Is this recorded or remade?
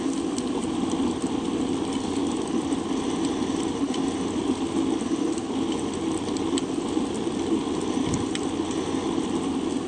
recorded